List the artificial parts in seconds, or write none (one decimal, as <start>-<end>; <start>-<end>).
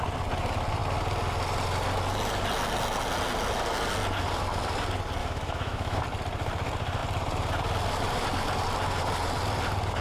5.2-6.0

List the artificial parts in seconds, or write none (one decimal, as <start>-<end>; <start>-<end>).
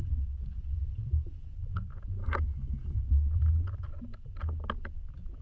2.2-3.0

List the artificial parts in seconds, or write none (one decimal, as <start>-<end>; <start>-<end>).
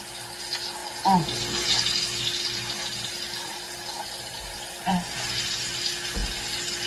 none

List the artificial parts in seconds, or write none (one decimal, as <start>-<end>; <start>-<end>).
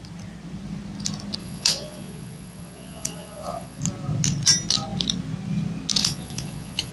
1.4-3.8; 6.0-6.9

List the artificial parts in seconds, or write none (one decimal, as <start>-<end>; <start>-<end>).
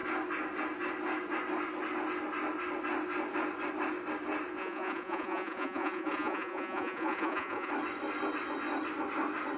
4.6-7.7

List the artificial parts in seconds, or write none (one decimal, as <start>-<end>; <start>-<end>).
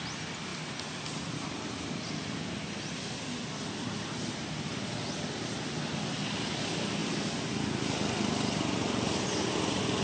0.5-1.5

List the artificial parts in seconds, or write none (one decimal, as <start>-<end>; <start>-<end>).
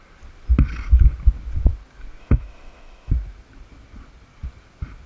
2.2-3.1